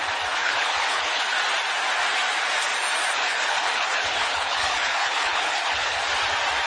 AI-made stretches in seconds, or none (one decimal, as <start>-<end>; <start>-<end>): 0.4-1.2; 3.1-6.0